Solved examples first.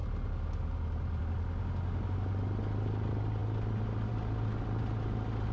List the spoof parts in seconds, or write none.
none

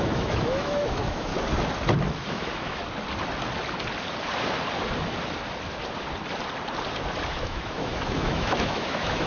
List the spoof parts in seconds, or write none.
0.0-1.3 (autoencoder, DAC-VAE); 2.3-2.8; 7.3-9.3

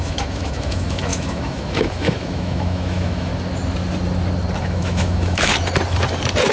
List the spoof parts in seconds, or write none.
0.0-3.3 (autoencoder, DAC-VAE); 4.6-5.5